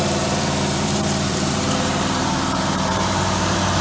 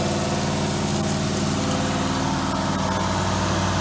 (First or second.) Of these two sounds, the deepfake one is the first